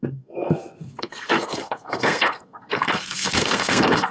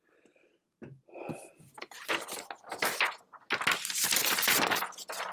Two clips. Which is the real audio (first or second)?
second